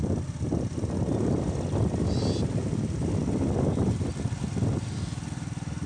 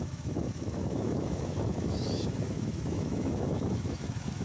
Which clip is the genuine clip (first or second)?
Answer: first